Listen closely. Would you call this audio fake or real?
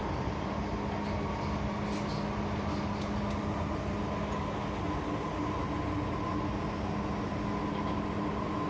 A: real